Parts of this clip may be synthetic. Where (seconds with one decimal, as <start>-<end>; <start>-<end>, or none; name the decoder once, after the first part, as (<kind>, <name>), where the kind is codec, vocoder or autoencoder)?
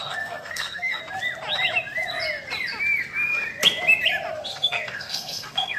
0.0-1.0 (codec, SNAC); 4.5-5.8